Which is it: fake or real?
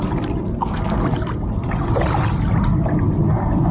real